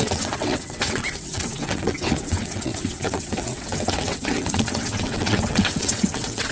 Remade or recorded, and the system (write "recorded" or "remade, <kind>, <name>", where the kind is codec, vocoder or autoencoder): remade, vocoder, WaveNeXt